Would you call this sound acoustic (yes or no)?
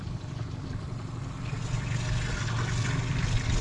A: no